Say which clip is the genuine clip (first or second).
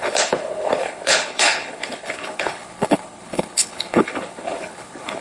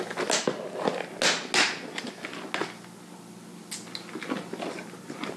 second